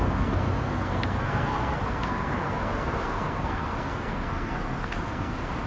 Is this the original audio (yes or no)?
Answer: no